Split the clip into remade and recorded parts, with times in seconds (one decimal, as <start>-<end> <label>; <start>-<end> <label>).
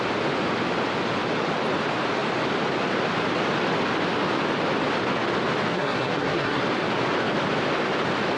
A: 0.0-5.7 recorded; 5.7-6.6 remade; 6.6-8.4 recorded